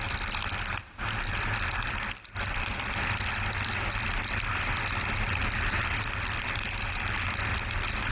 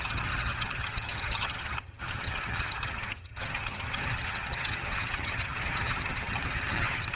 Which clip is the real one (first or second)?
first